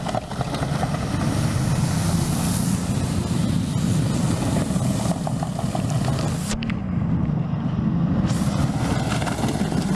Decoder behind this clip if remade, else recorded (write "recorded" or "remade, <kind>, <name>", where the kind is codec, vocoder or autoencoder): recorded